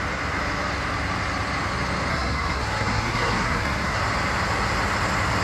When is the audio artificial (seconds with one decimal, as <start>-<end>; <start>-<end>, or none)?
2.1-4.0